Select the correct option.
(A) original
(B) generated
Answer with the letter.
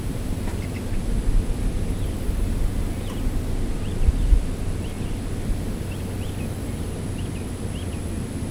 A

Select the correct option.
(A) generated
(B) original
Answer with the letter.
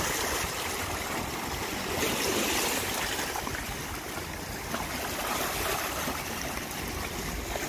B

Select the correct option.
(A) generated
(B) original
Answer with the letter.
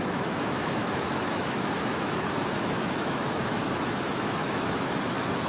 A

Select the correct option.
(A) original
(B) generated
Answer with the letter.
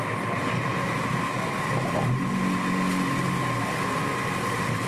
A